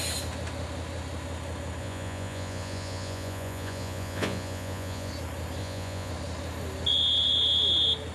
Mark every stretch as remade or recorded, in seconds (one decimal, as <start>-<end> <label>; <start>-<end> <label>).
0.0-1.8 recorded; 1.8-5.1 remade; 5.1-5.6 recorded; 5.6-6.1 remade; 6.1-8.1 recorded